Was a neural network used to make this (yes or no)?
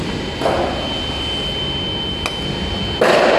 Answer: no